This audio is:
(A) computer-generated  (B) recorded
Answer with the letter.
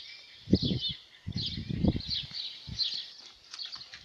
B